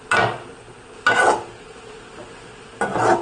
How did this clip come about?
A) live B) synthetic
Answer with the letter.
A